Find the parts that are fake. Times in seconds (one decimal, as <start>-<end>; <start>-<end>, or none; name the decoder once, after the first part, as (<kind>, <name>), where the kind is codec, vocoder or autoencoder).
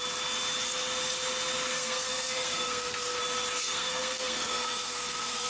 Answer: 1.7-3.2 (codec, SNAC); 3.6-5.5